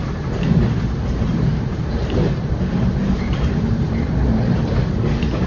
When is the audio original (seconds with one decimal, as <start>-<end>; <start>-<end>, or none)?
none